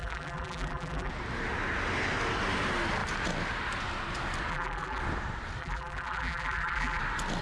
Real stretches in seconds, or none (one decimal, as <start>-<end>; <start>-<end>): 1.1-4.5; 5.0-5.6; 7.0-7.4